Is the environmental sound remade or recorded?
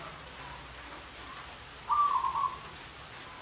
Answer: recorded